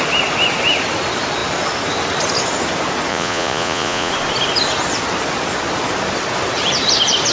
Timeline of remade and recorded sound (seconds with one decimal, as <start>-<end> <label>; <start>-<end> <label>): 0.0-3.1 recorded; 3.1-4.1 remade; 4.1-7.3 recorded